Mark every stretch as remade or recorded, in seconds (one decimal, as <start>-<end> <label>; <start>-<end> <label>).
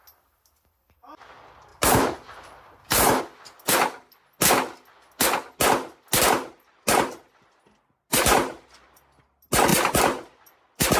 0.0-1.7 recorded; 1.7-3.2 remade; 3.2-11.0 recorded